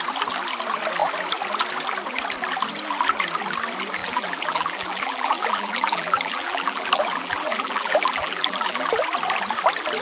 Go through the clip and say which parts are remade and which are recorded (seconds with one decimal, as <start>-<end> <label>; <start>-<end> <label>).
0.0-4.0 recorded; 4.0-8.9 remade; 8.9-10.0 recorded